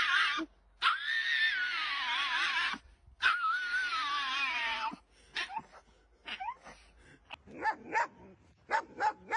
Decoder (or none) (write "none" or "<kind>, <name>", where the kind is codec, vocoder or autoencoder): none